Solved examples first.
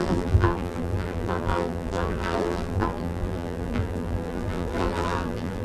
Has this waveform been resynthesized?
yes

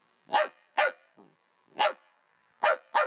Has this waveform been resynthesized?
yes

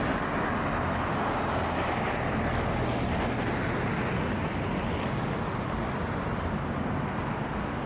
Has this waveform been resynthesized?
no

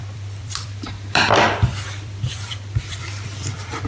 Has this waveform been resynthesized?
yes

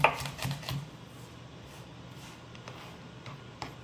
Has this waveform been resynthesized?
no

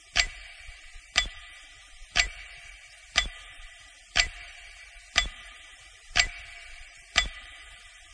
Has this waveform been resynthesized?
yes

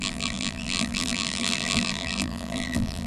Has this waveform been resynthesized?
yes